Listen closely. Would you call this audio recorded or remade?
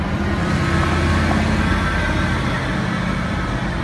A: recorded